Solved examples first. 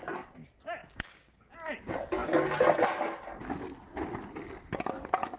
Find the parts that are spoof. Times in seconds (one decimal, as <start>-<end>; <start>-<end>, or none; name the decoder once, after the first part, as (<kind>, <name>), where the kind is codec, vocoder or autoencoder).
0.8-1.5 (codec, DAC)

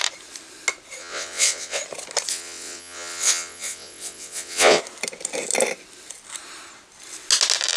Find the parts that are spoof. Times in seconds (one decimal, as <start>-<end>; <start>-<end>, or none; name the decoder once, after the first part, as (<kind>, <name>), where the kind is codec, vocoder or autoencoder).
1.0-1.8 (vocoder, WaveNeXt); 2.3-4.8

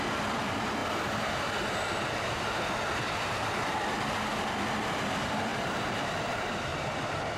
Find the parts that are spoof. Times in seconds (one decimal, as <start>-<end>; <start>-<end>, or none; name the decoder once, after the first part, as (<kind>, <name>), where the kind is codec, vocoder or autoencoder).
0.0-0.8 (vocoder, BigVGAN v2); 4.4-6.7